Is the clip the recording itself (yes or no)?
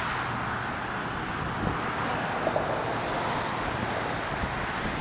yes